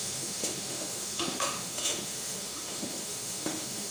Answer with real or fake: fake